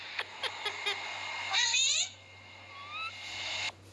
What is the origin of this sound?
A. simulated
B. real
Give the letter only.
B